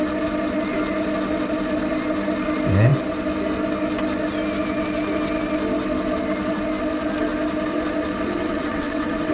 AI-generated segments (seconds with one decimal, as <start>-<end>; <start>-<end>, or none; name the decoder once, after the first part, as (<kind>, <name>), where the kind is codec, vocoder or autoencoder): 8.4-9.3 (vocoder, WaveNeXt)